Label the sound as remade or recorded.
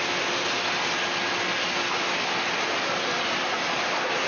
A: recorded